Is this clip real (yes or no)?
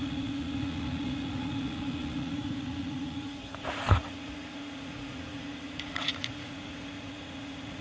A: no